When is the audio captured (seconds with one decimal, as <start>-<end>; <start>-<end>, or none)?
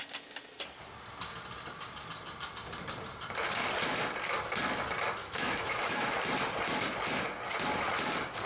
0.0-5.2; 6.0-8.5